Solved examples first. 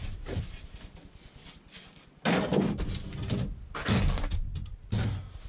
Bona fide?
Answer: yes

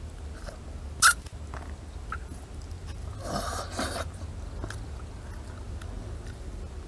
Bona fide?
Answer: yes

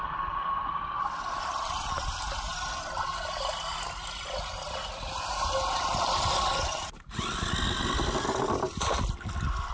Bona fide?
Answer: yes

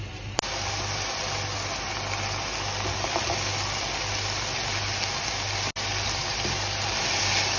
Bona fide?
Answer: yes